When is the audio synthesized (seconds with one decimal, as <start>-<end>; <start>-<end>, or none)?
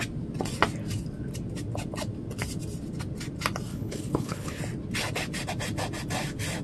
3.7-4.6